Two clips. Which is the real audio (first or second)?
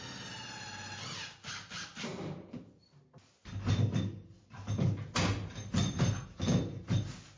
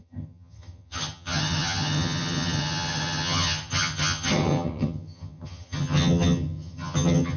first